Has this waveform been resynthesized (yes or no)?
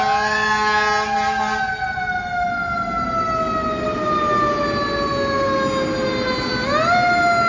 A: no